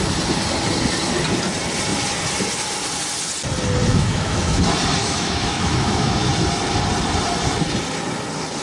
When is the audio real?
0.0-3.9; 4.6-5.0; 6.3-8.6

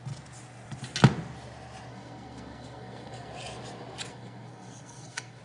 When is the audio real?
0.0-1.9; 3.3-4.1

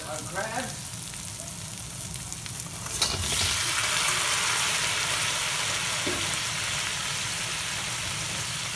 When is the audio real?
0.0-8.8

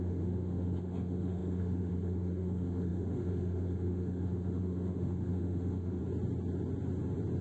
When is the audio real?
6.0-7.4

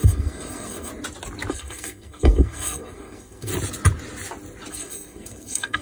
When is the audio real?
0.9-1.5; 3.5-4.7

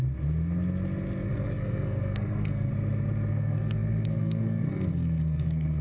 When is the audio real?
0.0-1.3; 2.7-3.3